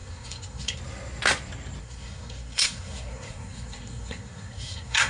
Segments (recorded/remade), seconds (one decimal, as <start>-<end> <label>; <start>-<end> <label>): 0.0-0.8 remade; 0.8-1.8 recorded; 1.8-5.1 remade